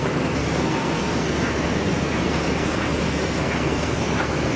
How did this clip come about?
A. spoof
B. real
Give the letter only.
A